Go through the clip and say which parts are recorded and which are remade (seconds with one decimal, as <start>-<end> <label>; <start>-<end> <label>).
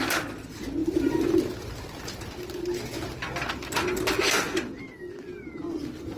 0.0-6.2 recorded